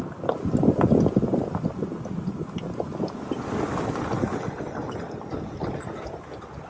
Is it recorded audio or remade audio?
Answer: recorded